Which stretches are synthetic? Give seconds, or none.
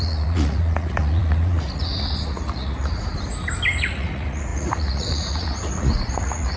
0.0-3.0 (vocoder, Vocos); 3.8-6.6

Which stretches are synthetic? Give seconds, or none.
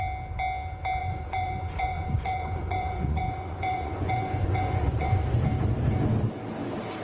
1.0-5.2 (vocoder, Vocos)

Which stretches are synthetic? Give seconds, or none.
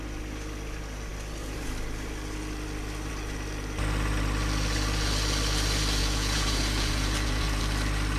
6.0-7.6 (vocoder, Vocos)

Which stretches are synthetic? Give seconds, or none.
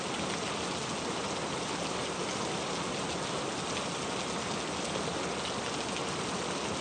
none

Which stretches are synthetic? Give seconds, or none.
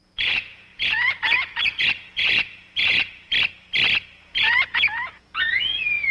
0.0-3.3 (vocoder, Vocos); 4.0-6.1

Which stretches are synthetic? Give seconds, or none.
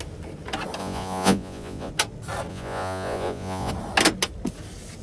0.8-1.9 (vocoder, Vocos); 2.5-3.7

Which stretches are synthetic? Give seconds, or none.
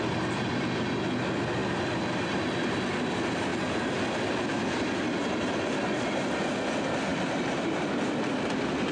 none